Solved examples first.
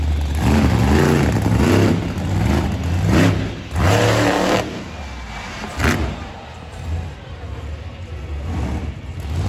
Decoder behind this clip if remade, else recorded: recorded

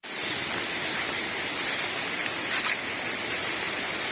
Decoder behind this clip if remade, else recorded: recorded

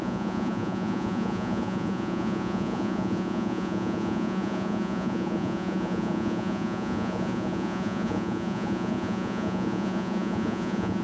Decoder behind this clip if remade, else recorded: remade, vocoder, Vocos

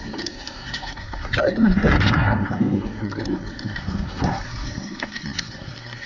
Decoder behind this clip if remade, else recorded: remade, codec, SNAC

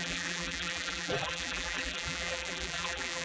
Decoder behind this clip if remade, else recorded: remade, vocoder, BigVGAN v2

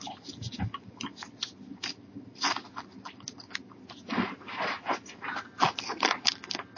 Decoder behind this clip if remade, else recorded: recorded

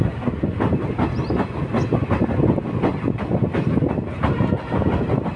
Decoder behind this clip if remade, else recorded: recorded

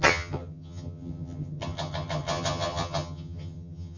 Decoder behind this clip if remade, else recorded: remade, vocoder, HiFi-GAN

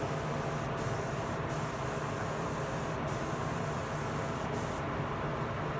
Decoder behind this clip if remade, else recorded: recorded